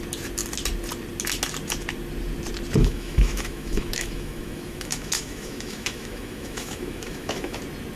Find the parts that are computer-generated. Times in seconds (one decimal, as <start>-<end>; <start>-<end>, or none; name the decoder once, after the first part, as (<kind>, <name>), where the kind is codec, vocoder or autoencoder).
2.8-7.6 (autoencoder, DAC-VAE)